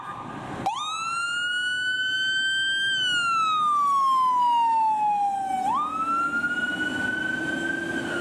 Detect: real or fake real